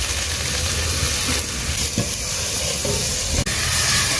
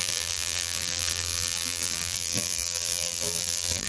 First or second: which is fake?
second